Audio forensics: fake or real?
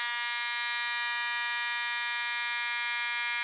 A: real